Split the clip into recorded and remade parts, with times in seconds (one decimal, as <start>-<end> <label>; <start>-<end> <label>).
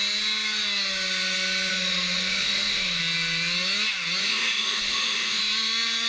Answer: 0.0-1.7 recorded; 1.7-3.0 remade; 3.0-4.2 recorded; 4.2-5.4 remade; 5.4-6.1 recorded